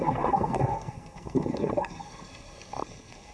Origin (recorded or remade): remade